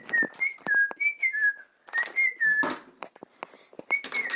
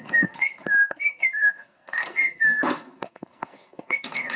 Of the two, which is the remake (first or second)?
second